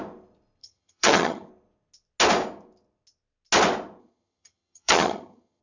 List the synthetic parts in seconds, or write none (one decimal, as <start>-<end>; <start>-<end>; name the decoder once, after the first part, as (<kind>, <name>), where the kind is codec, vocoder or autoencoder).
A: 0.6-1.5 (vocoder, HiFi-GAN); 4.0-5.6